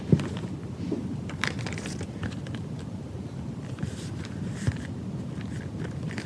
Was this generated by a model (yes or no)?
no